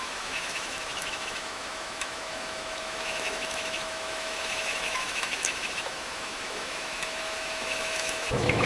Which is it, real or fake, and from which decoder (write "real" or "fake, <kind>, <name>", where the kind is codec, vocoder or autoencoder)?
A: fake, autoencoder, DAC-VAE